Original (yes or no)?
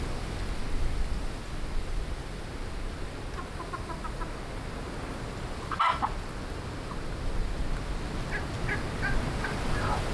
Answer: yes